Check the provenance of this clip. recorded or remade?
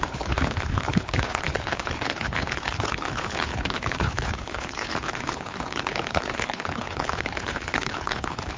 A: remade